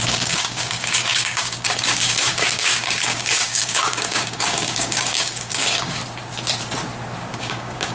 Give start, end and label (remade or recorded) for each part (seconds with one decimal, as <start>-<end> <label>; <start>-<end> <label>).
0.0-6.0 remade; 6.0-7.4 recorded; 7.4-7.9 remade